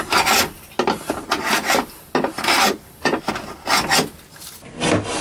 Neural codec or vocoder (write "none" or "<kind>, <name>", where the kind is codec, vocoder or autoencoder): none